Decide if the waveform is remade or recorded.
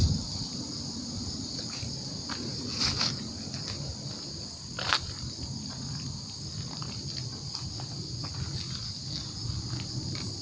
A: recorded